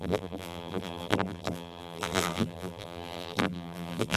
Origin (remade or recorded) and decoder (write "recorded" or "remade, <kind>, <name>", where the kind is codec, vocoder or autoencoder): remade, vocoder, BigVGAN v2